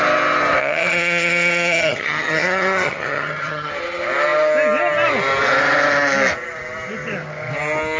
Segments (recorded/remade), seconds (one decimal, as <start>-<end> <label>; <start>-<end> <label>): 0.0-0.6 recorded; 0.6-3.7 remade; 3.7-8.0 recorded